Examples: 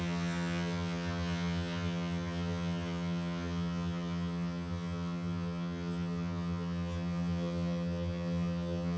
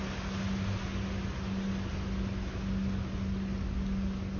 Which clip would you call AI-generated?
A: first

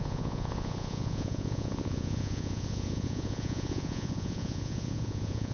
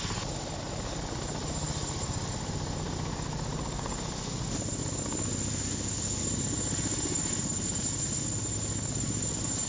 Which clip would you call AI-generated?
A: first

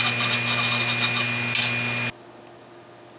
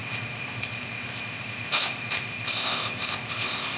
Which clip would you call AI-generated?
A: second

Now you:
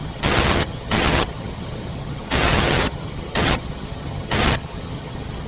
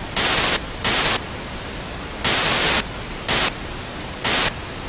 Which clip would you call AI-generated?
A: first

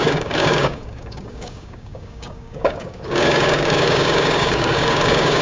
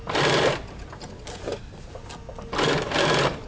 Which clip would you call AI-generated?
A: first